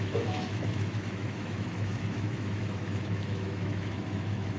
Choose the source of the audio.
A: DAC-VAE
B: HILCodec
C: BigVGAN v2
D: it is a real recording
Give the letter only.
A